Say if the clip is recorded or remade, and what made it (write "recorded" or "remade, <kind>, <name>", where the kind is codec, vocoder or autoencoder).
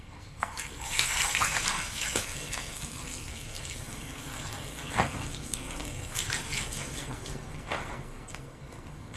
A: remade, codec, SNAC